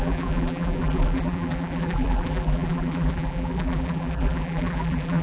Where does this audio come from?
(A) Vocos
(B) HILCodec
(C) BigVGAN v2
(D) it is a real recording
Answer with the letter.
C